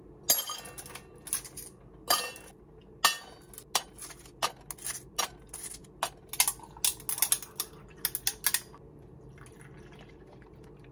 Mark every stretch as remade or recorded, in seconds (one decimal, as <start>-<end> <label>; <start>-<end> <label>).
0.0-10.9 recorded